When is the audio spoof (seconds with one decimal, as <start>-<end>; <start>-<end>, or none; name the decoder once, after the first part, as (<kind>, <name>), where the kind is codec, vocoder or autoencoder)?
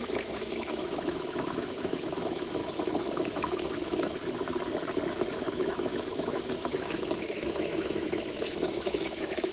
0.0-2.6 (autoencoder, DAC-VAE); 3.2-4.2; 5.3-9.5